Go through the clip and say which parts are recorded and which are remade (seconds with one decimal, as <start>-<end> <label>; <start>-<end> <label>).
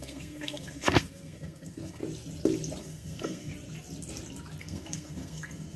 0.0-2.0 remade; 2.0-2.8 recorded; 2.8-3.5 remade; 3.5-4.6 recorded; 4.6-5.8 remade